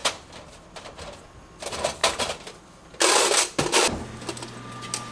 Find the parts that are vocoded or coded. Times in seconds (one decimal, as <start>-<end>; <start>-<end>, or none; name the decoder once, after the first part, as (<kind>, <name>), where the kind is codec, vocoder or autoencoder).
0.0-2.0 (vocoder, BigVGAN v2)